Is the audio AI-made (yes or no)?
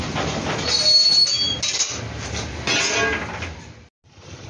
no